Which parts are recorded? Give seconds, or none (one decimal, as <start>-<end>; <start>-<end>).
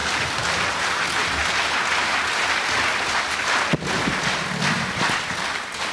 1.4-4.9